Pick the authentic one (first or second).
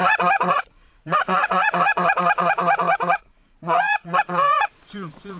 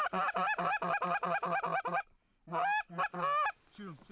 second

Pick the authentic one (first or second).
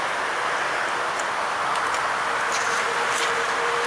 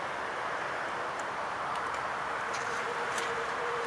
first